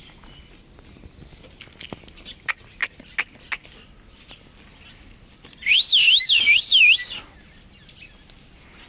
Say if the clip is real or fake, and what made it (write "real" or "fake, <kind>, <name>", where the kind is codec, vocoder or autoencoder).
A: real